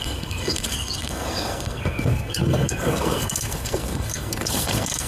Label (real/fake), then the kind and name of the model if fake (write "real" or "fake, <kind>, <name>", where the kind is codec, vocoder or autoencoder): fake, codec, SNAC